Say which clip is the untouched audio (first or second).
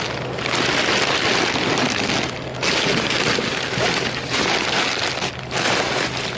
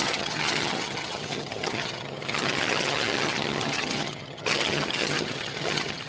first